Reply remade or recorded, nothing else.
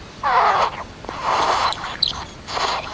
remade